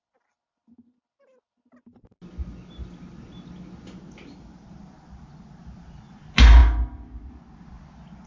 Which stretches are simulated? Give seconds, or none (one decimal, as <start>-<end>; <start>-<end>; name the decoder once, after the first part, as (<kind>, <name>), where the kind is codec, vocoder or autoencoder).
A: none